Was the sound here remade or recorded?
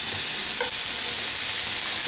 recorded